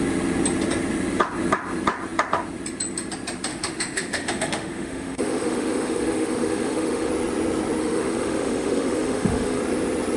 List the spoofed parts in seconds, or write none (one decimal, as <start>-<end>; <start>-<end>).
3.5-7.1; 7.8-9.6